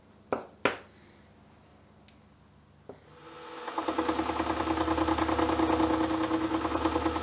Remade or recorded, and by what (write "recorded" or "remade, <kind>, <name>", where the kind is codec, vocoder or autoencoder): recorded